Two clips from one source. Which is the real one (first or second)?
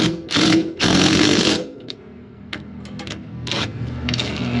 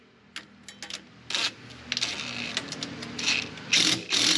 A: second